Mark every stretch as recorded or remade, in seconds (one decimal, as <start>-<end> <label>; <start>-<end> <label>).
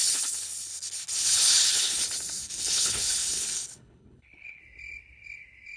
0.0-2.0 remade; 2.0-2.4 recorded; 2.4-4.6 remade; 4.6-5.8 recorded